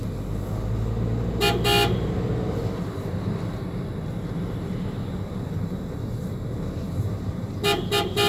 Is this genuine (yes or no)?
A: yes